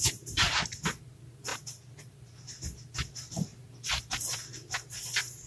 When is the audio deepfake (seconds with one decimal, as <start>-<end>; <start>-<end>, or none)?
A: 0.0-1.5; 2.1-5.5